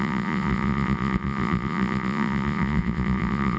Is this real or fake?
fake